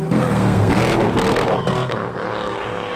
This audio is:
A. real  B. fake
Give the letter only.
B